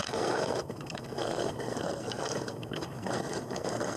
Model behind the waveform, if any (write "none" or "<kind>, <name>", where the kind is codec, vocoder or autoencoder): codec, SNAC